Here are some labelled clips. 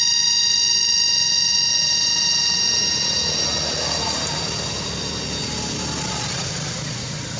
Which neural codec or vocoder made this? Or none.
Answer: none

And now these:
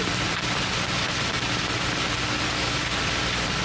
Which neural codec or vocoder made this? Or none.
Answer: vocoder, BigVGAN v2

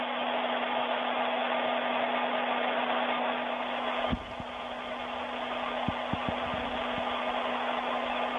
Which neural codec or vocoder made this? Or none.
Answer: none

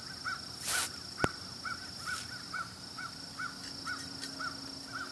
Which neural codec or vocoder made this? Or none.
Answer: none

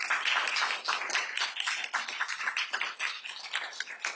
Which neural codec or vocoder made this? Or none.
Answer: none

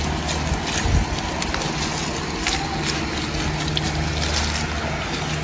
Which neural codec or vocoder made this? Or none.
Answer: none